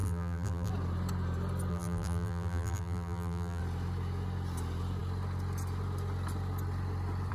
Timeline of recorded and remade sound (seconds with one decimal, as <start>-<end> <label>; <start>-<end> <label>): 0.0-0.7 remade; 0.7-1.7 recorded; 1.7-3.6 remade; 3.6-7.3 recorded